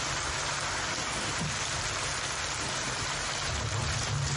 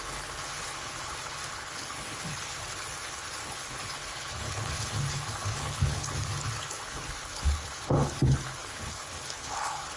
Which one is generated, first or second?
second